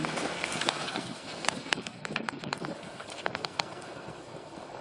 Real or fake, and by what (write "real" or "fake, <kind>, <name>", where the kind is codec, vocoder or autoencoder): fake, codec, SNAC